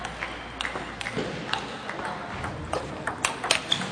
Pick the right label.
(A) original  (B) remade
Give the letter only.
A